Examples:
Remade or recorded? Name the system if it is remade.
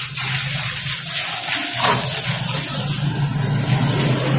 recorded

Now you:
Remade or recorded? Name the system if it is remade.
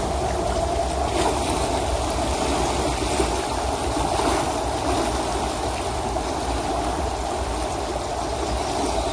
recorded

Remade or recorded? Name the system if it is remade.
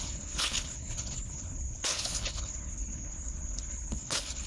remade, codec, HILCodec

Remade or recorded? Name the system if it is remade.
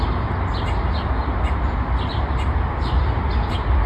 recorded